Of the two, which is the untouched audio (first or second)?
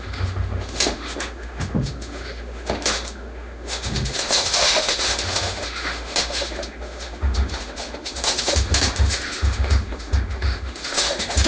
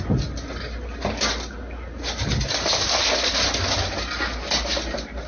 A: second